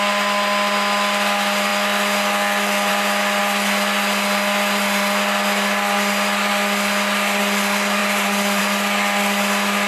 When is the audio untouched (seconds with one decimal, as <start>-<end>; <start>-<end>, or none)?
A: 0.0-9.9